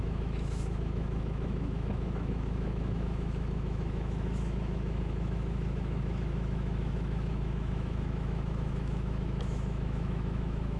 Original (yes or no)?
no